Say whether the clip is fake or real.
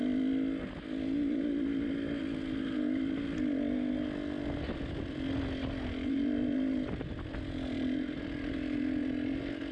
real